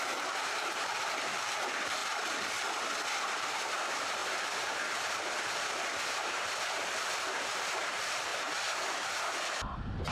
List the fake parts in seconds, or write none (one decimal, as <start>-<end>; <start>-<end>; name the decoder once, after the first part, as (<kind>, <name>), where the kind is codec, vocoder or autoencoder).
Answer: 0.0-2.0 (vocoder, BigVGAN v2); 3.2-8.3; 9.1-10.1